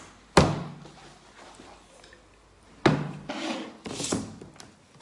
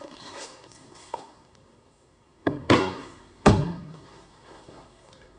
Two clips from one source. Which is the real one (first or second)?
first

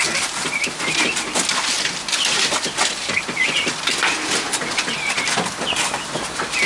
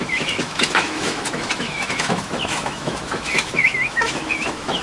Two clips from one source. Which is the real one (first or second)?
first